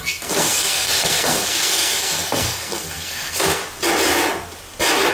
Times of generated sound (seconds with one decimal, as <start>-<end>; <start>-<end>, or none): 0.0-3.6